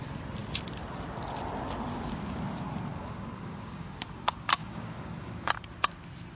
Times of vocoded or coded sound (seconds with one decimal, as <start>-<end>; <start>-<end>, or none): 2.9-4.0; 4.6-5.5